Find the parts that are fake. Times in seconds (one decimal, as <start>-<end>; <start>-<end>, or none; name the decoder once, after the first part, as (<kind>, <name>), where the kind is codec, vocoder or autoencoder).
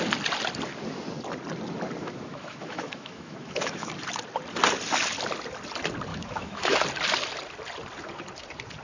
2.0-3.9 (autoencoder, DAC-VAE); 6.1-6.8